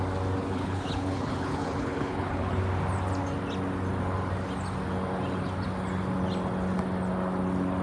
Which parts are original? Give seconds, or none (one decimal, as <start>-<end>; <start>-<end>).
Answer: 0.0-0.4; 2.6-7.8